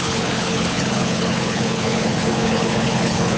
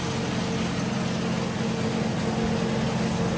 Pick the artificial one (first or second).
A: first